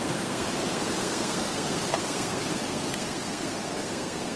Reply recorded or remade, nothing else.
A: remade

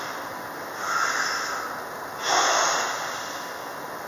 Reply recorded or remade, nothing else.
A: recorded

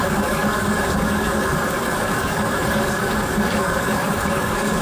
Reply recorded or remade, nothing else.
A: remade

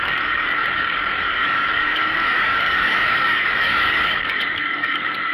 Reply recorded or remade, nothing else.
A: remade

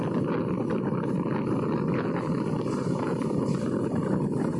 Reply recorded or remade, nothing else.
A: recorded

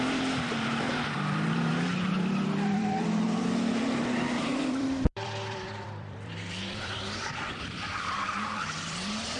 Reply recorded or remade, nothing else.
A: remade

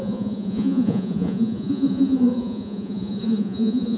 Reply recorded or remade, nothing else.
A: remade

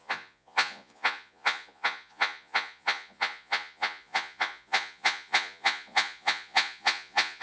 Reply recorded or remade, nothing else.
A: remade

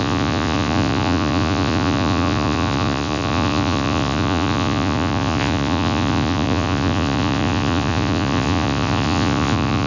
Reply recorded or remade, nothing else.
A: remade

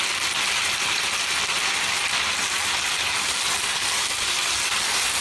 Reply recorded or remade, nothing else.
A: recorded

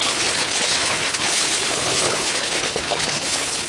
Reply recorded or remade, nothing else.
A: remade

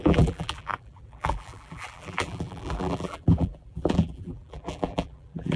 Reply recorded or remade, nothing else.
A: remade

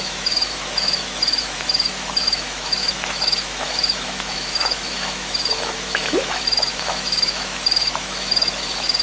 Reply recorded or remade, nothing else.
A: remade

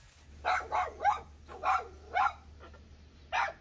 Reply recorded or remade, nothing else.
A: recorded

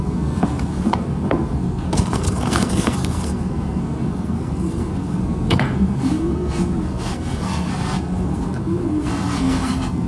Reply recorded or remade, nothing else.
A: remade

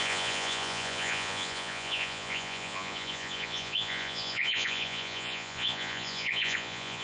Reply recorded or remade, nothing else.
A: remade